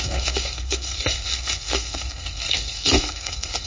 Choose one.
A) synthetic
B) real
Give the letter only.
A